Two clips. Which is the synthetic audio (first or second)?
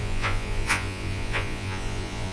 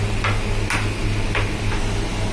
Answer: first